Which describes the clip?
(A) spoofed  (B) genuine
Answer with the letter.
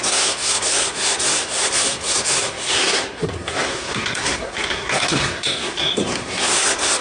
A